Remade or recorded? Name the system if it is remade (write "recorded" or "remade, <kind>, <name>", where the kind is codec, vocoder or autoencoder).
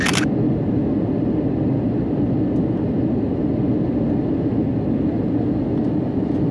recorded